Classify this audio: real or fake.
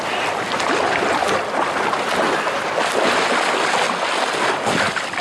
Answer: real